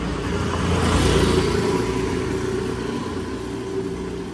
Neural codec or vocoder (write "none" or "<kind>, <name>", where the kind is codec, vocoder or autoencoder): none